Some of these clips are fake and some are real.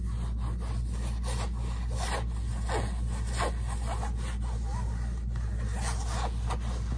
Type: real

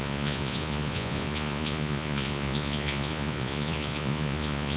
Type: fake